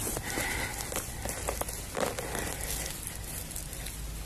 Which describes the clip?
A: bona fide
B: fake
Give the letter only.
A